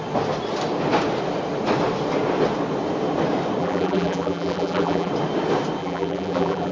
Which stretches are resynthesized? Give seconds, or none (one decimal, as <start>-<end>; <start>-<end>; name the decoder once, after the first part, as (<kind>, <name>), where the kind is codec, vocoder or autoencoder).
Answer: 3.6-5.1 (vocoder, BigVGAN v2); 5.8-6.7